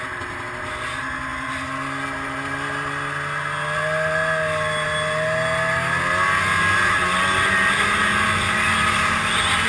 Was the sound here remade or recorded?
recorded